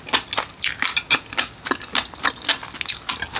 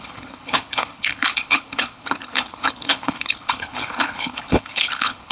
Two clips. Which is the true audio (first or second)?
first